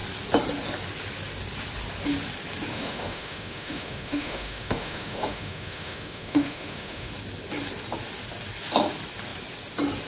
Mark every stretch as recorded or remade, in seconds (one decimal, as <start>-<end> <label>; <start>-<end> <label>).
0.0-2.7 recorded; 2.7-7.1 remade; 7.1-10.1 recorded